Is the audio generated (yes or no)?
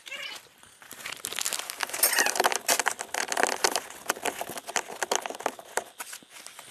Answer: no